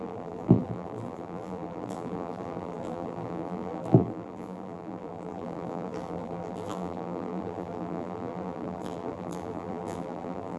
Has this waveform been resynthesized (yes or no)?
yes